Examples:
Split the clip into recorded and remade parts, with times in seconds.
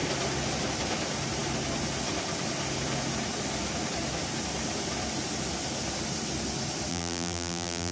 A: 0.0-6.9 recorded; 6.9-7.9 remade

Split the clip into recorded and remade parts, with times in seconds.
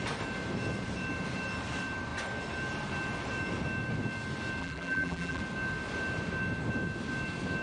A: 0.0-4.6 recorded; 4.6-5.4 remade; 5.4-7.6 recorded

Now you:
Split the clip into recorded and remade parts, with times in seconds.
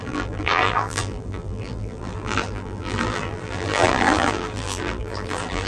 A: 0.0-5.7 remade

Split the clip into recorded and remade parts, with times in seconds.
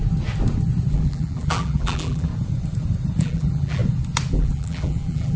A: 0.0-0.9 recorded; 0.9-2.3 remade; 2.3-3.2 recorded; 3.2-3.8 remade; 3.8-4.3 recorded; 4.3-5.4 remade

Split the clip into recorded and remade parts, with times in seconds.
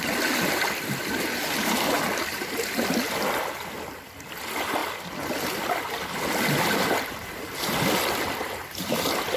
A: 0.0-1.0 recorded; 1.0-2.0 remade; 2.0-9.4 recorded